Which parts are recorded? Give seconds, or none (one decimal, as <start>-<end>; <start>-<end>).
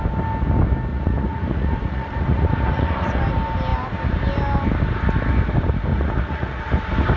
0.0-0.9; 3.2-5.9; 6.7-7.2